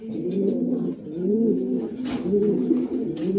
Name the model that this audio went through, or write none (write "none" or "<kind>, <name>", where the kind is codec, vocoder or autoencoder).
none